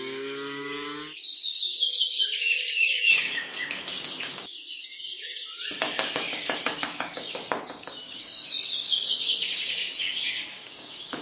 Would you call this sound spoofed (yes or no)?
yes